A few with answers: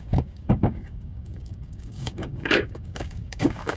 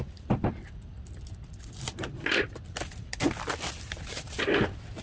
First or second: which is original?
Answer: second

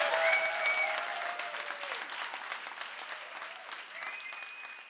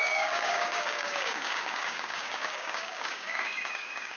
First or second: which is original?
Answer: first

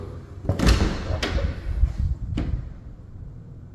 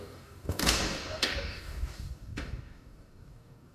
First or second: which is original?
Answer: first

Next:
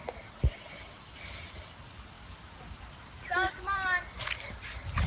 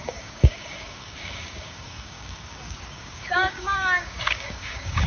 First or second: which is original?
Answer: first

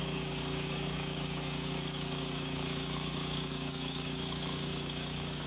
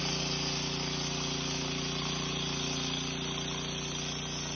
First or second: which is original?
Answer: second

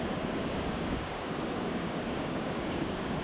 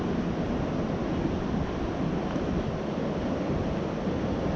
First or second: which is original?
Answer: second